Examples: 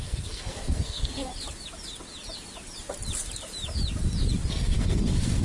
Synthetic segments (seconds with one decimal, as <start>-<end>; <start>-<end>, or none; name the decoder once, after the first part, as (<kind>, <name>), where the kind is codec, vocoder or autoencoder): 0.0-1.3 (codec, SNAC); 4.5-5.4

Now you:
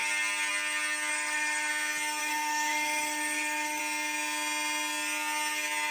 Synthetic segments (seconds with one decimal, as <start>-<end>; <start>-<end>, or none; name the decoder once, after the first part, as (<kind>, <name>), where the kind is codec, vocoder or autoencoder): 1.1-1.7 (codec, SNAC); 2.2-3.8

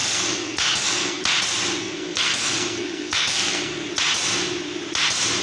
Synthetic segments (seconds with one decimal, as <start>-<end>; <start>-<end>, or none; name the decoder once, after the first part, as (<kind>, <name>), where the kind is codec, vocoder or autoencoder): 0.0-1.2 (codec, SNAC); 1.8-3.9

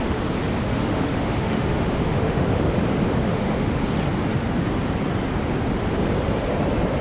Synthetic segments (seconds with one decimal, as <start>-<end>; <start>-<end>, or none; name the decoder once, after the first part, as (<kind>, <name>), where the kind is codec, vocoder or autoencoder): 0.6-2.7 (autoencoder, DAC-VAE); 3.2-3.8

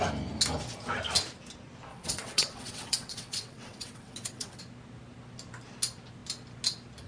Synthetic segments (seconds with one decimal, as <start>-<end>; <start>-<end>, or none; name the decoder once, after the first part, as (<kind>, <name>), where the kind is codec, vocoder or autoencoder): 1.9-4.6 (vocoder, WaveNeXt)

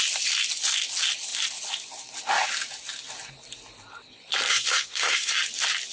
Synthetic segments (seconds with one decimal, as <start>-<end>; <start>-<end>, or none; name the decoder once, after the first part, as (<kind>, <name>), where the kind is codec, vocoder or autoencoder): 4.5-5.3 (codec, SNAC)